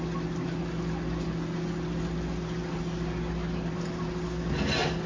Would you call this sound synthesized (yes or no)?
no